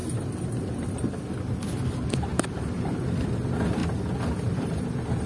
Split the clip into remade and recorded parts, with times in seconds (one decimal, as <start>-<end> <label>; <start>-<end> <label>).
0.0-2.3 remade; 2.3-3.1 recorded; 3.1-3.8 remade; 3.8-4.5 recorded; 4.5-5.3 remade

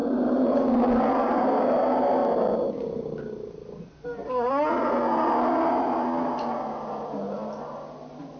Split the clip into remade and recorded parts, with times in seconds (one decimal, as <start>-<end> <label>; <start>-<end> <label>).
0.0-8.4 recorded

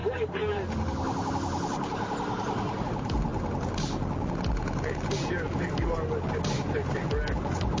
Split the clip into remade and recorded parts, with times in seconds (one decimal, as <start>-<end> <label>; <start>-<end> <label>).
0.0-7.8 recorded

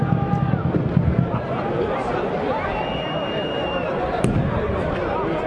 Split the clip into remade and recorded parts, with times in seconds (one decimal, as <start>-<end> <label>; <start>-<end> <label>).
0.0-3.3 recorded; 3.3-4.8 remade; 4.8-5.5 recorded

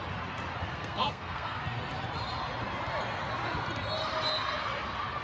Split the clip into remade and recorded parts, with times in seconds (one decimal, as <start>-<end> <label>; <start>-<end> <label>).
0.0-0.7 recorded; 0.7-1.6 remade; 1.6-5.2 recorded

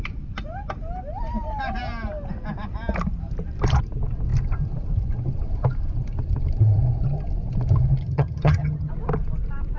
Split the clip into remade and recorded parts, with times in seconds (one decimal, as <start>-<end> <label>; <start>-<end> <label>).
0.0-8.0 recorded; 8.0-8.9 remade; 8.9-9.8 recorded

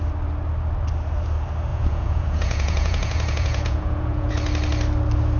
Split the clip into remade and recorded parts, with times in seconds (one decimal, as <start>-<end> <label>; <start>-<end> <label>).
0.0-1.7 recorded; 1.7-4.3 remade; 4.3-5.4 recorded